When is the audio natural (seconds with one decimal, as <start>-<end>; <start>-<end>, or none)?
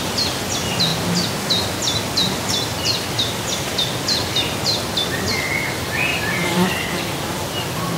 0.0-6.1; 6.7-8.0